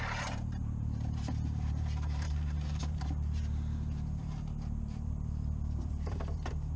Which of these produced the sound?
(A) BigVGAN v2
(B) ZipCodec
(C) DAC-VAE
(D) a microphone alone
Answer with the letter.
A